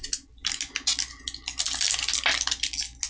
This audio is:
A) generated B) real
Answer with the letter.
B